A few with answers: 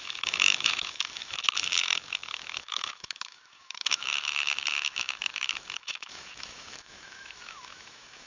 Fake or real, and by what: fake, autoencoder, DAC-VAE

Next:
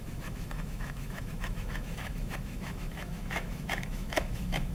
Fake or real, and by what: fake, autoencoder, DAC-VAE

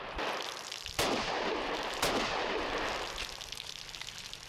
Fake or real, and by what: real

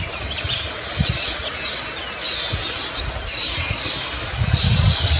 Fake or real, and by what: real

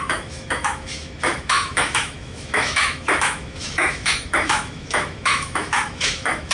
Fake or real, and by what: fake, autoencoder, DAC-VAE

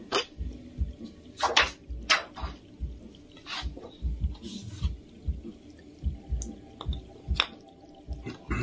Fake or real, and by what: real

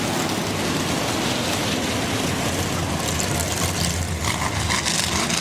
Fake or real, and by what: real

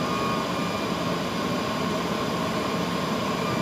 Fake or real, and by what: real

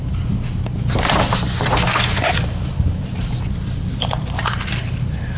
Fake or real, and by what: real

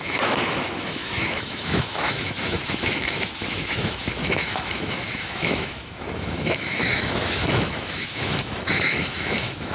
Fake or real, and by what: fake, autoencoder, DAC-VAE